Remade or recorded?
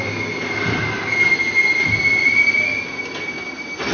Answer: recorded